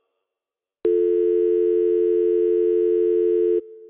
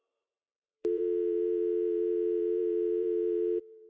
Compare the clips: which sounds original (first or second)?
first